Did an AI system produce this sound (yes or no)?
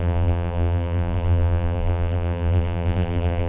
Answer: yes